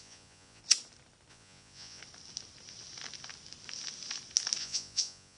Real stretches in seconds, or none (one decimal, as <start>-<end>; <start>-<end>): 0.6-1.3; 2.0-4.6